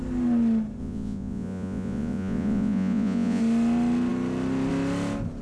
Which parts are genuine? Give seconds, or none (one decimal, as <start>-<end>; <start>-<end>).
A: 0.0-0.8; 3.4-5.4

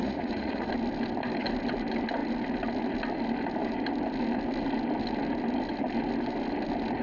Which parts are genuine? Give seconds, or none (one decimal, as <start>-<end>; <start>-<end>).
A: 0.7-7.0

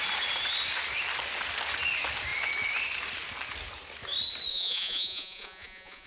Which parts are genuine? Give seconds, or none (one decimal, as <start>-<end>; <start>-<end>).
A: 0.0-4.5